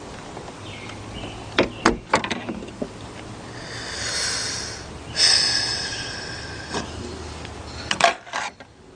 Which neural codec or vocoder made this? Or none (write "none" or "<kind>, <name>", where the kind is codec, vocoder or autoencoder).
none